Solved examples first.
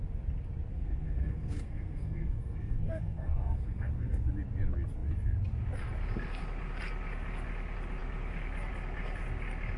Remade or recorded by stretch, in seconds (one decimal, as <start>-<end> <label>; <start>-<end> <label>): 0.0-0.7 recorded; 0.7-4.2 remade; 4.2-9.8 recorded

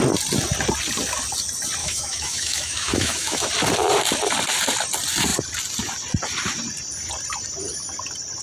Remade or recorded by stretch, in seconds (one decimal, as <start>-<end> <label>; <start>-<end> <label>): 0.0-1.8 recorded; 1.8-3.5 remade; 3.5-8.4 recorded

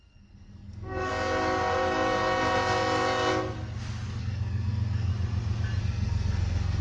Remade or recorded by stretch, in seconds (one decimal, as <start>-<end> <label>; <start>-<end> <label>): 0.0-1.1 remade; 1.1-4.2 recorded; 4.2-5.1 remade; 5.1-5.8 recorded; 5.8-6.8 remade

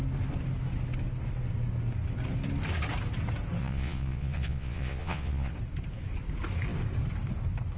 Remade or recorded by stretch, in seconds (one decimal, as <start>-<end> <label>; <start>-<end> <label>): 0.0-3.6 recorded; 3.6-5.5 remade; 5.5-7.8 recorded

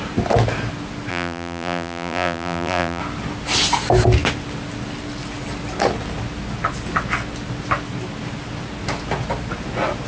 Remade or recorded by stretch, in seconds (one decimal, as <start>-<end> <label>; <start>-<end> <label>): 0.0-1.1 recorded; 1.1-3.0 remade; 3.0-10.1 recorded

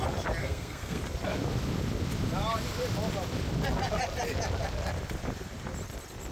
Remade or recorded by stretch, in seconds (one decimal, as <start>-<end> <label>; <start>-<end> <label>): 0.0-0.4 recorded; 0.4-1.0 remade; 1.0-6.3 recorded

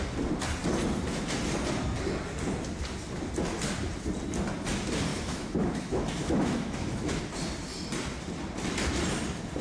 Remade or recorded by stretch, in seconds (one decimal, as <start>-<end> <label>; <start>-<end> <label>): 0.0-5.1 recorded; 5.1-7.2 remade; 7.2-9.6 recorded